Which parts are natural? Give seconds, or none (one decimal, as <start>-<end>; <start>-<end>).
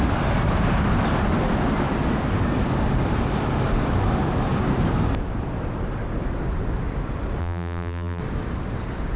0.0-7.4; 8.2-9.2